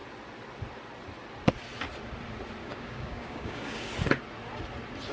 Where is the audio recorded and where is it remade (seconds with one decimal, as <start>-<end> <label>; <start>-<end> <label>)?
0.0-2.6 recorded; 2.6-3.9 remade; 3.9-5.1 recorded